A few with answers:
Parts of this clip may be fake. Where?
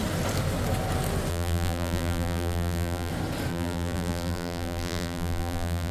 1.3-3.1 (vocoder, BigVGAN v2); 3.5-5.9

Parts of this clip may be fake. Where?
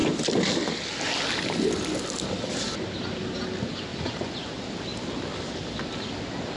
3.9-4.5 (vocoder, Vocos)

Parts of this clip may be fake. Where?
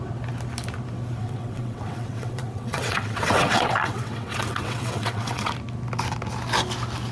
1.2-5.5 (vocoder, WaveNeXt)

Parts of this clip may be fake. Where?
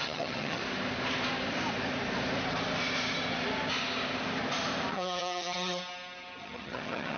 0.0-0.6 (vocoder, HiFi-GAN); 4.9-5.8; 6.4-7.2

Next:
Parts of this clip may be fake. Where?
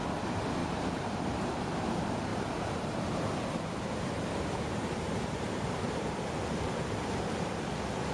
0.6-1.5 (vocoder, BigVGAN v2); 2.3-6.9